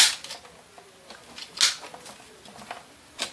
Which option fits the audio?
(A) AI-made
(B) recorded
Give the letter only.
B